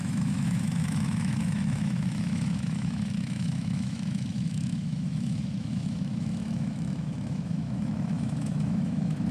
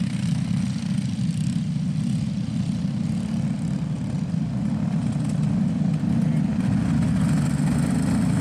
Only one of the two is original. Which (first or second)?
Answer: second